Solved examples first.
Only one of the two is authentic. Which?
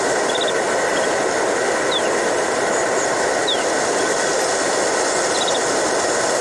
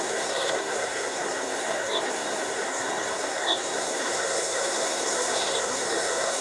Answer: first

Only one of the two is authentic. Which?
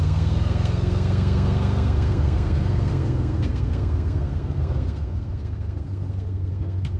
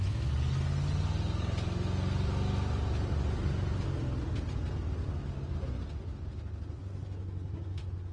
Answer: second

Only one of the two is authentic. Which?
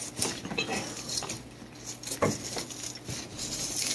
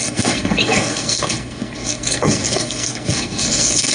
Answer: first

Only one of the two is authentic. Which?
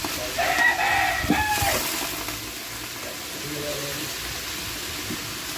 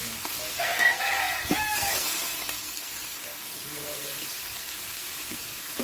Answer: first